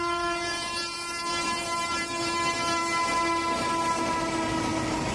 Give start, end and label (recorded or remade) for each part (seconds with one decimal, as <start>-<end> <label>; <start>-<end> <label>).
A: 0.0-2.8 remade; 2.8-5.1 recorded